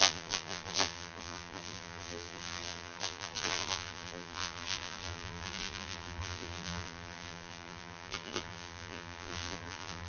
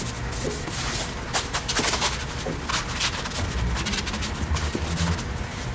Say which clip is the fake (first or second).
first